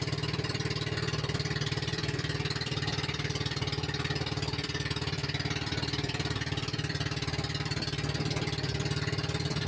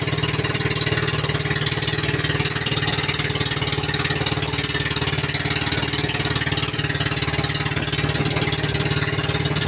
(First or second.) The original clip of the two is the second